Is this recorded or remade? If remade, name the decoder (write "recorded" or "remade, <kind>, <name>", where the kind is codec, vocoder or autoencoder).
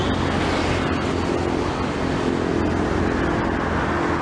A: recorded